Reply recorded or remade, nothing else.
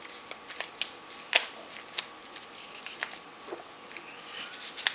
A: recorded